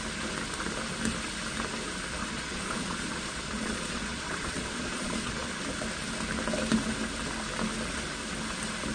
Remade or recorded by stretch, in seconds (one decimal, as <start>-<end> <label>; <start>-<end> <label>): 0.0-2.2 recorded; 2.2-5.6 remade; 5.6-8.9 recorded